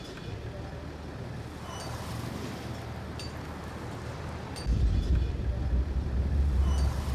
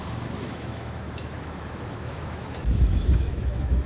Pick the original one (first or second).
first